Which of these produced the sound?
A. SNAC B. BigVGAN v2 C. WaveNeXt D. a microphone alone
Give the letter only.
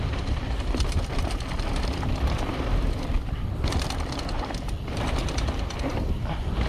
B